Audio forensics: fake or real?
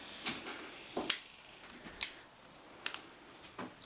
fake